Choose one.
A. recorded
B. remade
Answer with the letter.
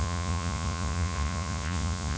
B